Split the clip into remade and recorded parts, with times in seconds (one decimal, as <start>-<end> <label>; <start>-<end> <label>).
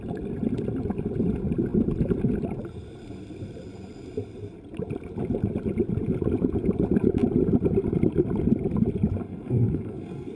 0.0-9.2 recorded; 9.2-10.4 remade